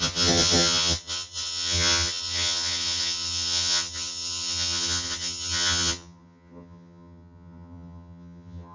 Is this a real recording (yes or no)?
no